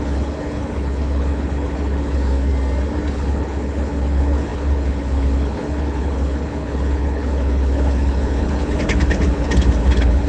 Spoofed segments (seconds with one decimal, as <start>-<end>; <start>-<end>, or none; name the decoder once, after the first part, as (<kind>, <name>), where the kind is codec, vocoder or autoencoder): 0.0-2.5 (codec, HILCodec); 3.1-10.3